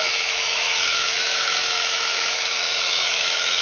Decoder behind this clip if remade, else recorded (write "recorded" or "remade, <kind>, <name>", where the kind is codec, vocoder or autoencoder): remade, autoencoder, DAC-VAE